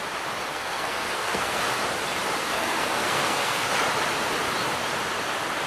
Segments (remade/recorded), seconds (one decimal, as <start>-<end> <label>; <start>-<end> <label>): 0.0-0.5 recorded; 0.5-1.6 remade; 1.6-2.4 recorded; 2.4-3.7 remade; 3.7-5.7 recorded